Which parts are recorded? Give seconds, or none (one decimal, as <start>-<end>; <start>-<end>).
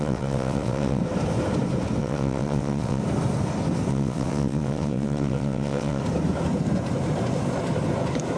1.0-2.0; 3.0-3.9; 6.0-8.4